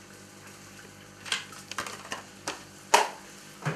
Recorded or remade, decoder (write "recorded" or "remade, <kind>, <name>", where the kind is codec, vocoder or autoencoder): recorded